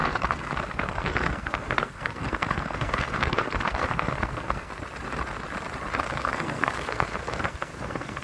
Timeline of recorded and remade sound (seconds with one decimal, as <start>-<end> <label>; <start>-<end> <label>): 0.0-4.7 remade; 4.7-6.0 recorded; 6.0-8.2 remade